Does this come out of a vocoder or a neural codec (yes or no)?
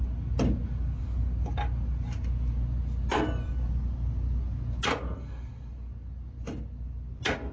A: no